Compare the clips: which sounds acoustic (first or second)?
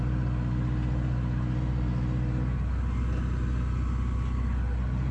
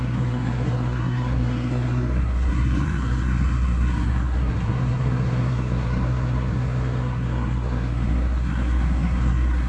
first